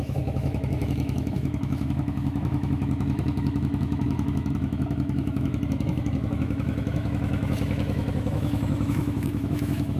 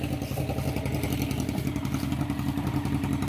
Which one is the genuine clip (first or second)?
second